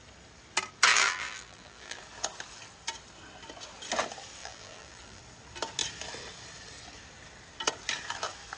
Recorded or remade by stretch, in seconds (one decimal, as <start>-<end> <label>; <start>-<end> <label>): 0.0-0.9 recorded; 0.9-2.0 remade; 2.0-4.4 recorded; 4.4-5.2 remade; 5.2-8.6 recorded